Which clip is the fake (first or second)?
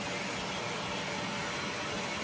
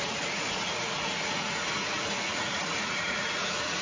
second